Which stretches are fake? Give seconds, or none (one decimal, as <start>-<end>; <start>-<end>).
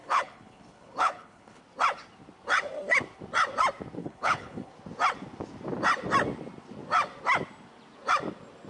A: 0.0-1.6; 4.0-4.7